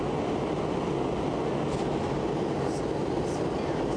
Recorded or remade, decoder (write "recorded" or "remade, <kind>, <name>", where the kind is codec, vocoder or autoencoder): recorded